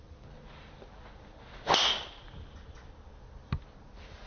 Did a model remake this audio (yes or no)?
no